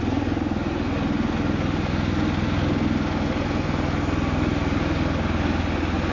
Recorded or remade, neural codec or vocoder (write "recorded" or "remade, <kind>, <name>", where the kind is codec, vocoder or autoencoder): recorded